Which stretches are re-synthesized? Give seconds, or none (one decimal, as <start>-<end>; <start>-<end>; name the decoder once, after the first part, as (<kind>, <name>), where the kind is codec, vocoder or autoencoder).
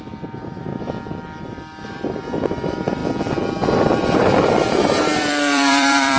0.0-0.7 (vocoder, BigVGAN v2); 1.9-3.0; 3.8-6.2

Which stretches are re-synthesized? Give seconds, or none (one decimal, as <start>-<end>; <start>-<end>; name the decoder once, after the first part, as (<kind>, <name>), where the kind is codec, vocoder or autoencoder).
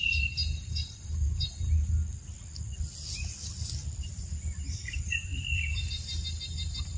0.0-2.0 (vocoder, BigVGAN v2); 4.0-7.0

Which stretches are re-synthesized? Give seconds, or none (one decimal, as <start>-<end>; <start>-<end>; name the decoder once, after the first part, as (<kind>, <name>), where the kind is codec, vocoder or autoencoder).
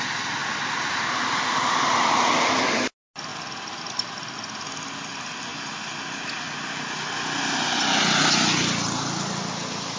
none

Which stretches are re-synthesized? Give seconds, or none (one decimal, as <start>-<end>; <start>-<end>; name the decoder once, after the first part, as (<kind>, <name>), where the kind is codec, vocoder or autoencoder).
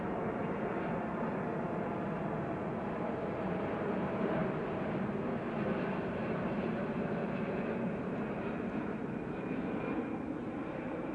0.0-0.4 (vocoder, BigVGAN v2); 2.8-4.4; 5.9-11.1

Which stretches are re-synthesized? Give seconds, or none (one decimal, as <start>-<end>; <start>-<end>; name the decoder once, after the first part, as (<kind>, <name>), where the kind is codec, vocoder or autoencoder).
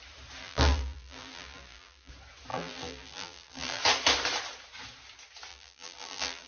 0.4-2.1 (vocoder, BigVGAN v2); 2.5-3.8; 5.5-6.5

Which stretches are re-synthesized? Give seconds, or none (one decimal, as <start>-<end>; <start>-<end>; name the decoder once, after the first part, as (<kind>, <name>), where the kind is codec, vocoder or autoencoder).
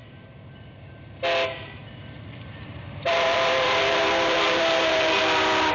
1.8-5.2 (vocoder, BigVGAN v2)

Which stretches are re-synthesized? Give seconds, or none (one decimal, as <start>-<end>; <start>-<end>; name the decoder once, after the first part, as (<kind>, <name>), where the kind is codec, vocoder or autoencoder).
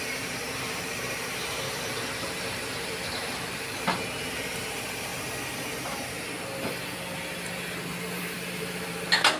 0.0-5.1 (vocoder, BigVGAN v2); 8.2-9.4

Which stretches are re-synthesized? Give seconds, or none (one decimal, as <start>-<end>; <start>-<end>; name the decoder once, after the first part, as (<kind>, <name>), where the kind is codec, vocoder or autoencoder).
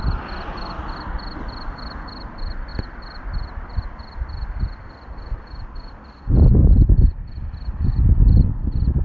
6.6-7.3 (vocoder, BigVGAN v2)